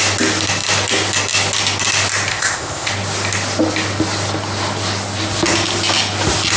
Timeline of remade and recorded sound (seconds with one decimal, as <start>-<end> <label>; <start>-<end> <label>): 0.0-2.3 recorded; 2.3-2.9 remade; 2.9-6.6 recorded